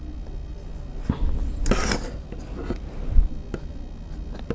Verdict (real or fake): real